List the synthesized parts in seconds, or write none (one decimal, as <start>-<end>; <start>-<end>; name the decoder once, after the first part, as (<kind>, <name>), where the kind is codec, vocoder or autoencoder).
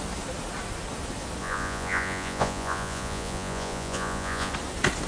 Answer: 1.4-4.5 (vocoder, Vocos)